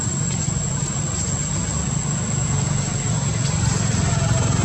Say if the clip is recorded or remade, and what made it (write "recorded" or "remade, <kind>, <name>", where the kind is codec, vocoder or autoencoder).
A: recorded